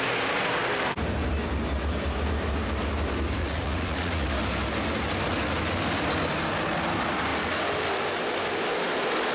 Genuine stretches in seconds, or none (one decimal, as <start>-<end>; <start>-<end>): 0.0-3.4; 4.3-9.3